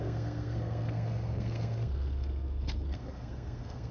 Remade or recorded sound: remade